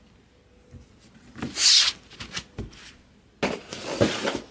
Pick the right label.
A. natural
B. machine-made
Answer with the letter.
A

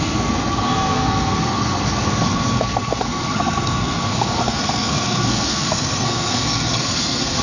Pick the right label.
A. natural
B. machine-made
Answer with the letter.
B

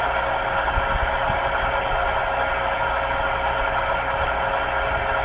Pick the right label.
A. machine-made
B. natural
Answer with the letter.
B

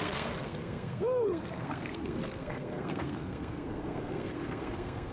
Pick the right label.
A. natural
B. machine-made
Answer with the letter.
B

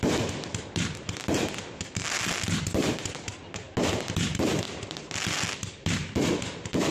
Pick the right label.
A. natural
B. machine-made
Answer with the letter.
A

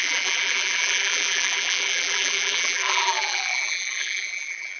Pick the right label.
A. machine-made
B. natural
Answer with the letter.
A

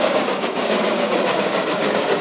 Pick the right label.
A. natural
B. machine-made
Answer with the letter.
B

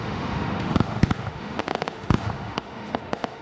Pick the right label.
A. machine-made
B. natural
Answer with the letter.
A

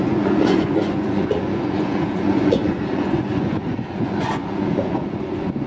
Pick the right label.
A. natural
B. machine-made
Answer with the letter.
B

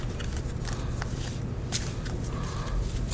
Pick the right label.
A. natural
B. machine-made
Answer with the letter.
A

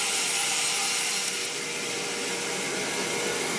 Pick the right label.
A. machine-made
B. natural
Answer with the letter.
B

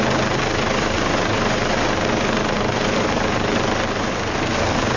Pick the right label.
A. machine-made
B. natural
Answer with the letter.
B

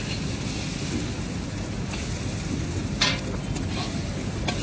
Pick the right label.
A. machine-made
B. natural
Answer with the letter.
B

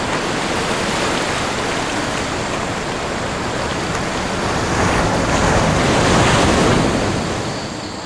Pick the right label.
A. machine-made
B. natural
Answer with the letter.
B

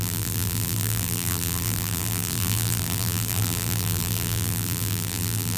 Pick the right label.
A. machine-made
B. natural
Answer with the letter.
A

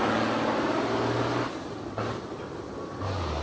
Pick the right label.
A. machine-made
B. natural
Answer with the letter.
B